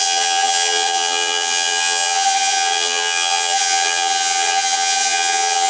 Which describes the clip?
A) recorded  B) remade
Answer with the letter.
B